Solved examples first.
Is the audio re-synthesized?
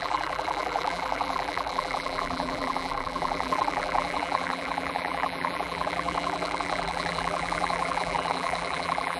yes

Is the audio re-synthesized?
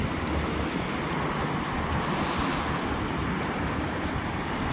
no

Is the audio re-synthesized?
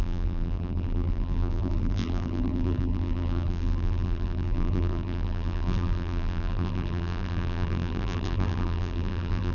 yes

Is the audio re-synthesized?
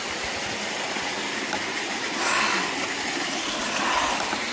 no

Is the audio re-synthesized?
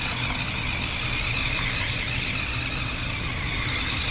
no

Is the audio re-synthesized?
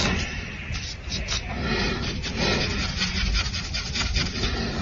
no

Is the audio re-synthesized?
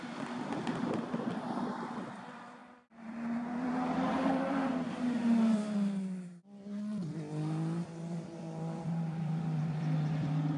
yes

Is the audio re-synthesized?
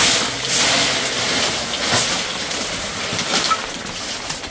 no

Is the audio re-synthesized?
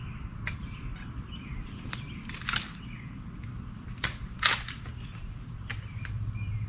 yes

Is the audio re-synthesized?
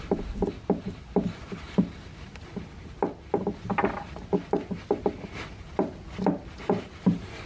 no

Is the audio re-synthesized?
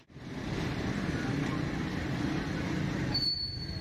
yes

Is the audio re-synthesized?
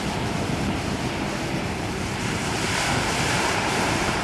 yes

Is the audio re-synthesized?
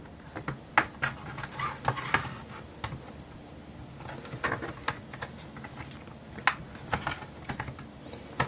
no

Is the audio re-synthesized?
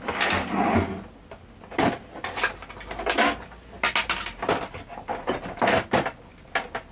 no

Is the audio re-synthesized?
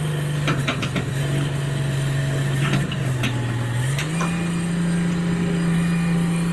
no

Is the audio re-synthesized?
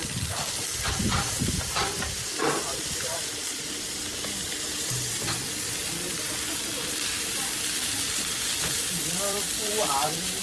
yes